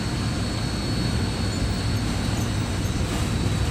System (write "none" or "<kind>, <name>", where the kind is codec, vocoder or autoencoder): none